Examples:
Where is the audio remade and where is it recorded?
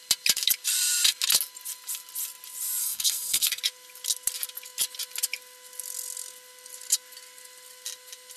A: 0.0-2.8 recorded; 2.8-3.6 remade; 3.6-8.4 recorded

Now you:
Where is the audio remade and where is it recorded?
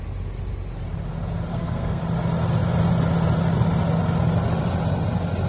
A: 0.0-1.5 recorded; 1.5-2.0 remade; 2.0-5.5 recorded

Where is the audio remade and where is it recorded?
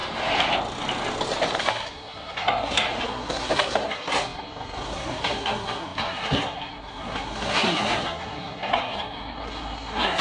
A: 0.0-1.6 recorded; 1.6-10.2 remade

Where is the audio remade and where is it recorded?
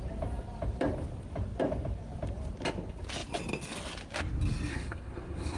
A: 0.0-4.7 recorded; 4.7-5.6 remade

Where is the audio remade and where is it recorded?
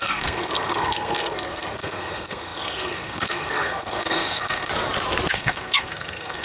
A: 0.0-4.7 remade; 4.7-5.3 recorded; 5.3-6.4 remade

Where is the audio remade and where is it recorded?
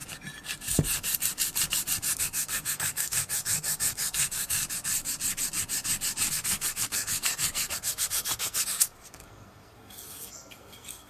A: 0.0-2.2 recorded; 2.2-4.6 remade; 4.6-6.3 recorded; 6.3-11.1 remade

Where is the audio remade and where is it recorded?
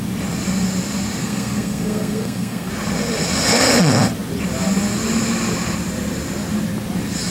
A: 0.0-1.2 recorded; 1.2-2.7 remade; 2.7-7.3 recorded